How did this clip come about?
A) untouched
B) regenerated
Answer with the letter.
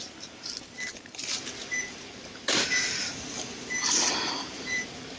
B